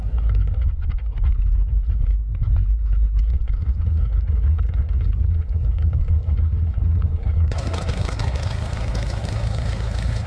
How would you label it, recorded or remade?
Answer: remade